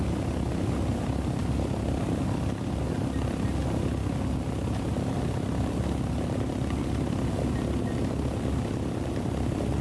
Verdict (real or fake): real